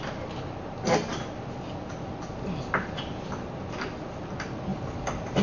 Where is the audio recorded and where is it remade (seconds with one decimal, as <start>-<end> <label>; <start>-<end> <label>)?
0.0-5.4 recorded